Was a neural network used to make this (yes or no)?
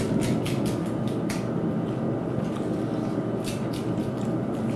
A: no